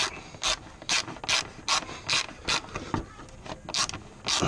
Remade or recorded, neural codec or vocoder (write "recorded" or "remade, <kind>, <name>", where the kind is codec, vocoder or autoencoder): recorded